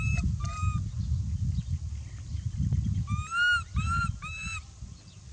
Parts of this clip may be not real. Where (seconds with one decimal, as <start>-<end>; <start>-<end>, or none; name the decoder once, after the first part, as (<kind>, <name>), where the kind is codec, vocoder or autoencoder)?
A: none